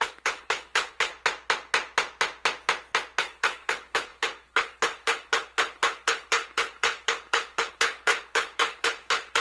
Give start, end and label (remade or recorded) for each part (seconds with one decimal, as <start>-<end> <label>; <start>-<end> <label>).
0.0-1.1 remade; 1.1-3.2 recorded; 3.2-9.4 remade